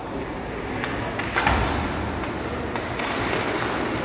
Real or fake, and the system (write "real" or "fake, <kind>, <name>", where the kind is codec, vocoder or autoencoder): real